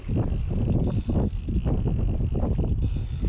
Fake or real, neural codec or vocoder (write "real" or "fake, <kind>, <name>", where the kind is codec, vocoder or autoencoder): real